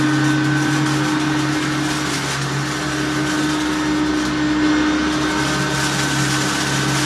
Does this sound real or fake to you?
real